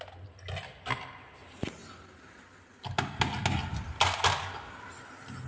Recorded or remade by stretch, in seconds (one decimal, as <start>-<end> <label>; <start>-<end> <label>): 0.0-5.5 recorded